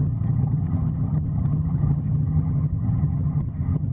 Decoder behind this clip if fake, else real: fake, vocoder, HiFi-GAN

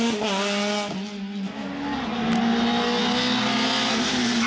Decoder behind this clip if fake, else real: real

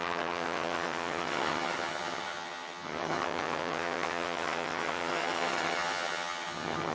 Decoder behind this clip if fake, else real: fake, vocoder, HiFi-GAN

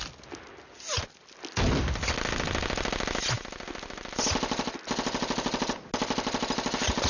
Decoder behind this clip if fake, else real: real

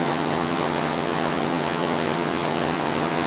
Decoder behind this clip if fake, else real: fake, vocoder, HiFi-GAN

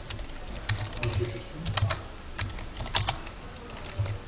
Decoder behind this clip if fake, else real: real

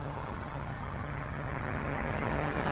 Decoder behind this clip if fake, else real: fake, vocoder, HiFi-GAN